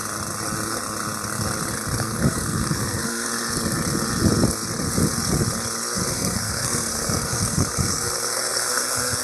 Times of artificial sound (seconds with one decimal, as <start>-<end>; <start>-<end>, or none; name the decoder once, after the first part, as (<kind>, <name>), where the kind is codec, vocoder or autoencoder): 2.0-3.3 (codec, SNAC); 6.1-9.2